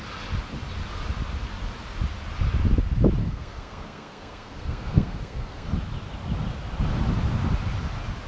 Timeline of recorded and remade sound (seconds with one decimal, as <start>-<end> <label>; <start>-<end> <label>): 0.0-3.2 recorded; 3.2-5.7 remade; 5.7-8.3 recorded